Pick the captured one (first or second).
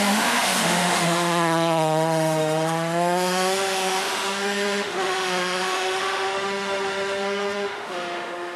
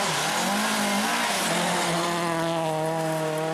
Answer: second